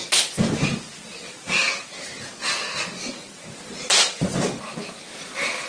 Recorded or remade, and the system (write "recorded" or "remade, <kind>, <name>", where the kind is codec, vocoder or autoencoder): recorded